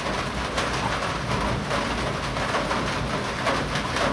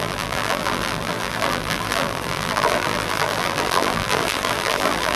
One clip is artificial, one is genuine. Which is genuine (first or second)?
first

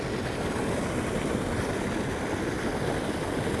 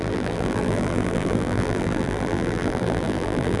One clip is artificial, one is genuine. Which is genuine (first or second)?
first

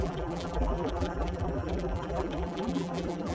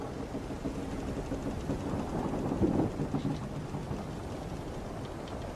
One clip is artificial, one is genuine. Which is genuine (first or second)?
second